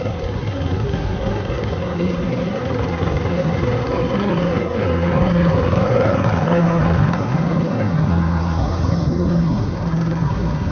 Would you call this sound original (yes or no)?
no